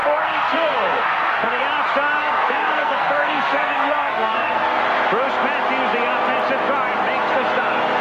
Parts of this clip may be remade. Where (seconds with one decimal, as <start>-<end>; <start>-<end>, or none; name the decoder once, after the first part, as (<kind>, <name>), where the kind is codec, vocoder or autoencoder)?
0.0-1.6 (codec, SNAC); 2.2-4.8